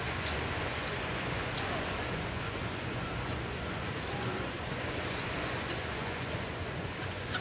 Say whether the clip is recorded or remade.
remade